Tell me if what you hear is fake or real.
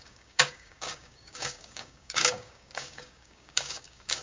fake